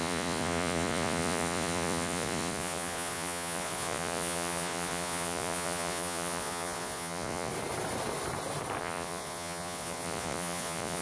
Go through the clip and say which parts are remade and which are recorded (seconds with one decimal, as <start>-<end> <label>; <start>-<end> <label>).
0.0-7.5 remade; 7.5-8.8 recorded; 8.8-11.0 remade